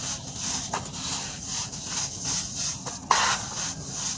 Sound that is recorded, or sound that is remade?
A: recorded